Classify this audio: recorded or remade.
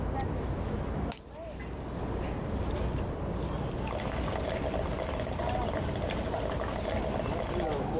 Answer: recorded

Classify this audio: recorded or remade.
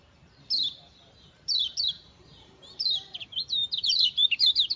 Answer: remade